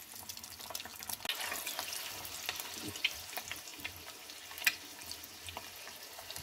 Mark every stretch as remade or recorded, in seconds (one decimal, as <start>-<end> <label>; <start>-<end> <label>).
0.0-6.4 recorded